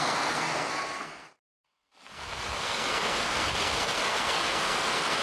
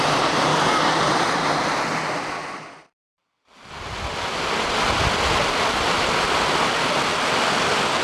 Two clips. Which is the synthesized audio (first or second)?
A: first